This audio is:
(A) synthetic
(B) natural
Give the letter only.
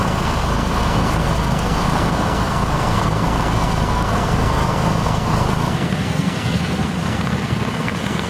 A